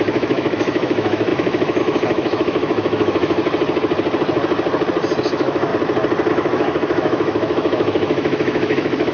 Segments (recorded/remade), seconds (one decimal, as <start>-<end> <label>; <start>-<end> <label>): 0.0-3.4 remade; 3.4-5.2 recorded; 5.2-5.7 remade; 5.7-6.3 recorded; 6.3-9.1 remade